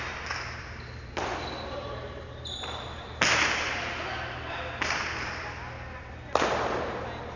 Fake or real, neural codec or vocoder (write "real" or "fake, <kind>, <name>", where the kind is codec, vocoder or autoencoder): real